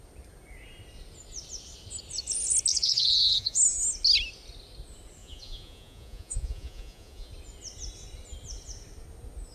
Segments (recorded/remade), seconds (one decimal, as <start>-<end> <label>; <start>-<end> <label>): 0.0-2.7 recorded; 2.7-3.6 remade; 3.6-5.2 recorded; 5.2-7.3 remade; 7.3-9.5 recorded